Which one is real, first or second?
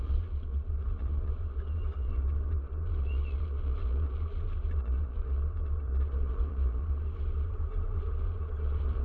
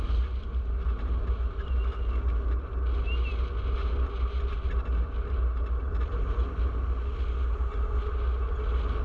second